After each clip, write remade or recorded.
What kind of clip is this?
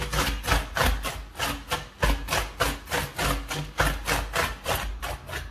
recorded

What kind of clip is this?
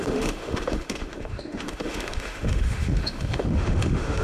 remade